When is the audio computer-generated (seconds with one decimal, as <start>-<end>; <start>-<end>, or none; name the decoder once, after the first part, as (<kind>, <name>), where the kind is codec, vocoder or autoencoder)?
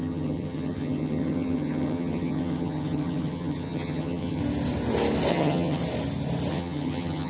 0.0-4.4 (vocoder, HiFi-GAN); 5.3-5.8; 6.5-7.3